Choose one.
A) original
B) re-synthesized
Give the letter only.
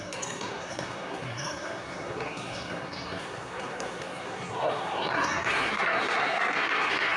B